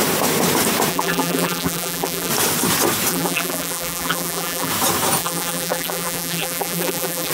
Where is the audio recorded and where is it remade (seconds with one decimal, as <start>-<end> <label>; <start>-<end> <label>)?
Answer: 0.0-0.9 recorded; 0.9-2.3 remade; 2.3-3.1 recorded; 3.1-4.7 remade; 4.7-5.2 recorded; 5.2-7.3 remade